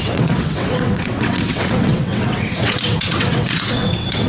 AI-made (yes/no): yes